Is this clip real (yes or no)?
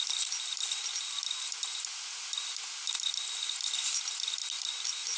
yes